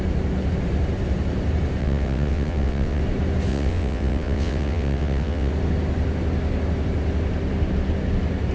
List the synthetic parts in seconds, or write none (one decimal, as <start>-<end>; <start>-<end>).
1.8-3.0; 3.5-5.5